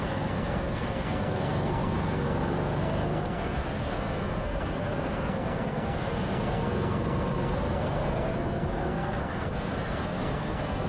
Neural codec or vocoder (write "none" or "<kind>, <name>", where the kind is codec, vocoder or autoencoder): codec, SNAC